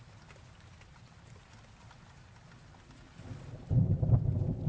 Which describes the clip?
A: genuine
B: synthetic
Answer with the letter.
A